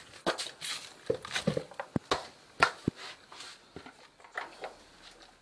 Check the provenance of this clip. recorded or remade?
recorded